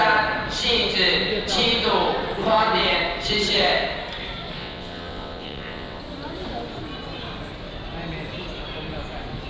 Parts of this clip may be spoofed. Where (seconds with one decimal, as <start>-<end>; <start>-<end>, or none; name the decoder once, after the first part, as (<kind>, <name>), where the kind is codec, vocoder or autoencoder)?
4.6-6.0 (vocoder, WaveNeXt)